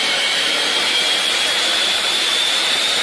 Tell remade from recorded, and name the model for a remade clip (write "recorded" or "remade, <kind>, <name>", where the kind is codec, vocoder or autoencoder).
remade, vocoder, BigVGAN v2